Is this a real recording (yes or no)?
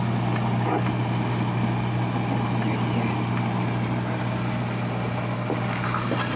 yes